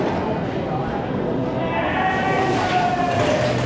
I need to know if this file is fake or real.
real